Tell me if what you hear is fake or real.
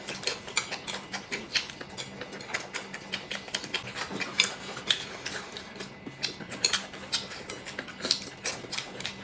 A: real